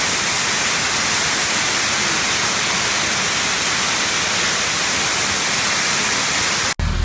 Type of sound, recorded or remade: recorded